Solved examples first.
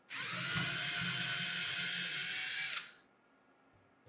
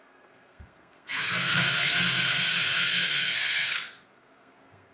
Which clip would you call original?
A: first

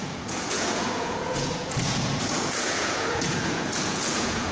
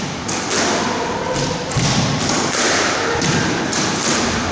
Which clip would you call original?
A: second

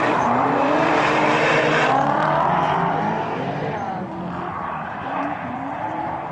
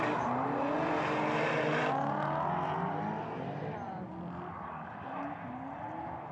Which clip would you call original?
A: second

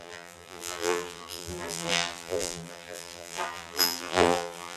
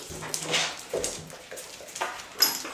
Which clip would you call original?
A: second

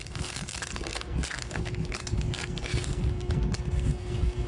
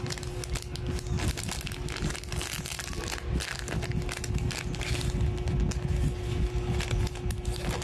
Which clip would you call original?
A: second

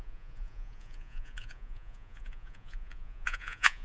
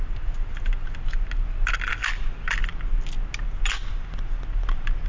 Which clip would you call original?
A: second